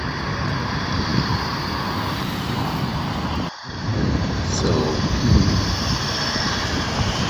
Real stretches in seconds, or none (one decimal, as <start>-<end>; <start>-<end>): none